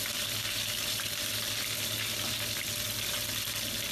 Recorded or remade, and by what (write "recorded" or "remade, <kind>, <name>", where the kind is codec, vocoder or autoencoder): recorded